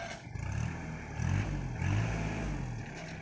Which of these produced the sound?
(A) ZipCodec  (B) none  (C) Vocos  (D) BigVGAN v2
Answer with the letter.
B